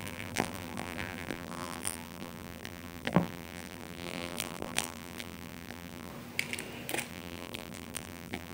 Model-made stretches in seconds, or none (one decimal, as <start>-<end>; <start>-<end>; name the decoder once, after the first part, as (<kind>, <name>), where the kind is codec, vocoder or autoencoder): 0.0-6.1 (vocoder, BigVGAN v2); 7.1-8.5